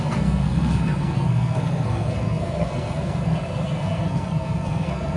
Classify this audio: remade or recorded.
remade